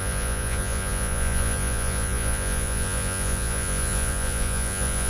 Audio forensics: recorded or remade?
remade